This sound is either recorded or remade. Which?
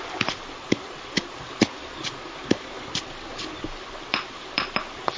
recorded